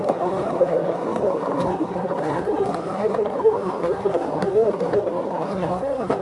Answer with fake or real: fake